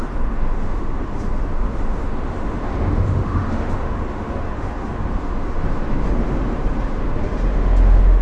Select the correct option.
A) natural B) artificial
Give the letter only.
B